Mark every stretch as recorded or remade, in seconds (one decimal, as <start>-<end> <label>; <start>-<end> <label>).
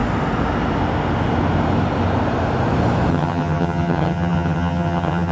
0.0-3.1 recorded; 3.1-5.3 remade